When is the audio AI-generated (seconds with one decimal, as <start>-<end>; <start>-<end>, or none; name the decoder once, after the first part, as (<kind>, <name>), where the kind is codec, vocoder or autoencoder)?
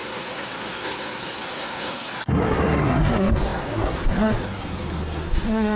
0.0-5.8 (codec, SNAC)